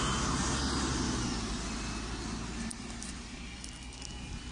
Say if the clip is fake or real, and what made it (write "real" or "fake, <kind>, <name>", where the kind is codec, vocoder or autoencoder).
real